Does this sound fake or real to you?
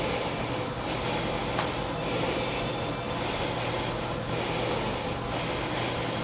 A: real